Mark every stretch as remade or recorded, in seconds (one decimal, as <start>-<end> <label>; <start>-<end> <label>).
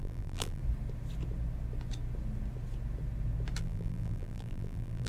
0.0-0.6 remade; 0.6-3.6 recorded; 3.6-5.1 remade